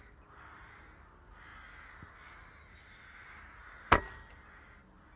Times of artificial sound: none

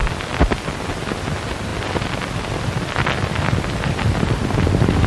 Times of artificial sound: none